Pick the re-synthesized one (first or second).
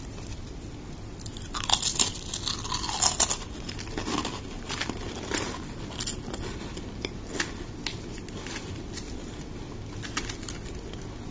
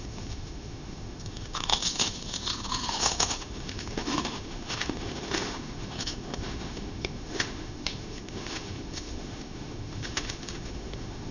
second